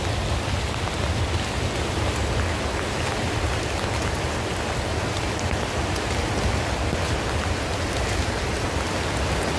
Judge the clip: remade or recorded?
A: recorded